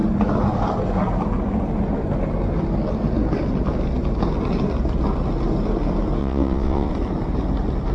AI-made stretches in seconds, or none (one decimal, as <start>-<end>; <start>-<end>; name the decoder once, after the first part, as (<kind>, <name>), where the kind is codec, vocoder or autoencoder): 6.2-6.9 (vocoder, WaveNeXt)